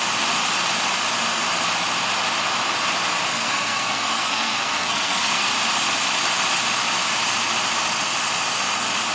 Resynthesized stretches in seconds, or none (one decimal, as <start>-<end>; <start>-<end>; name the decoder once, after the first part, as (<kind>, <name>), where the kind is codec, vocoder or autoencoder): 3.3-5.5 (codec, SNAC)